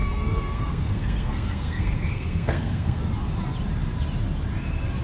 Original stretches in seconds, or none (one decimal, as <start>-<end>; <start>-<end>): 3.0-5.0